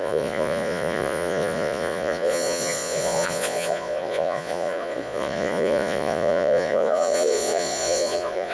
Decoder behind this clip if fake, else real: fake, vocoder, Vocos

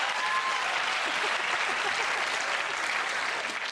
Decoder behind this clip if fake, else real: real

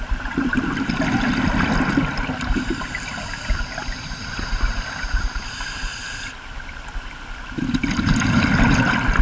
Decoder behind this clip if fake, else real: real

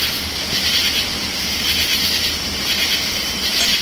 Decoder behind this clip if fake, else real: real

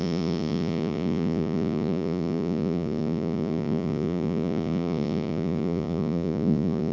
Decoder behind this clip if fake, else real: fake, vocoder, Vocos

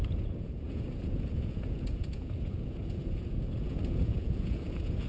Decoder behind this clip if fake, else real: fake, vocoder, Vocos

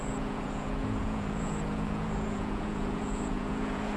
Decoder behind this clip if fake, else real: fake, vocoder, Vocos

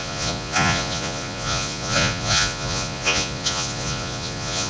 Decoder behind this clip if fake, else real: fake, vocoder, Vocos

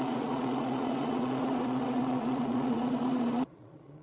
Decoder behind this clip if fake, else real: fake, vocoder, Vocos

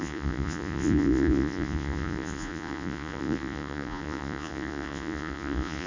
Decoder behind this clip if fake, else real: fake, vocoder, Vocos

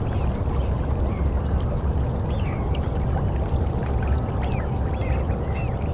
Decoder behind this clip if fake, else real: real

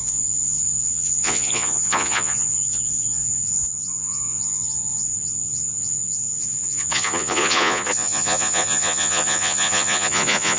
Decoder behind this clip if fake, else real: fake, vocoder, Vocos